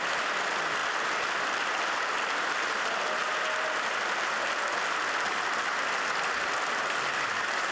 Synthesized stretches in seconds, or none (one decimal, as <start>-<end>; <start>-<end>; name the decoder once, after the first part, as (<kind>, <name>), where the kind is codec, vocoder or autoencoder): 0.0-3.2 (vocoder, BigVGAN v2); 6.5-7.7